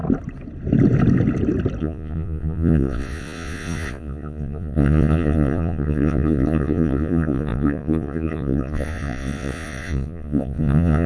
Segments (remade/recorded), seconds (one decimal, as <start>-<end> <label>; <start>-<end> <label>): 0.0-1.8 recorded; 1.8-11.1 remade